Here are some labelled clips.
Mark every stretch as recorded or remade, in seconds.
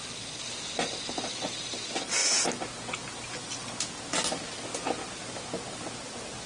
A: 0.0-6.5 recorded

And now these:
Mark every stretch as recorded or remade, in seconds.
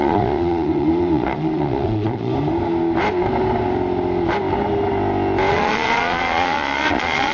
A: 0.0-2.3 remade; 2.3-5.5 recorded; 5.5-7.3 remade